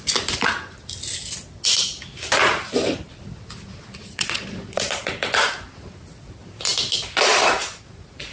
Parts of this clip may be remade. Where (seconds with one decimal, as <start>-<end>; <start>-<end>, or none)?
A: 4.0-5.1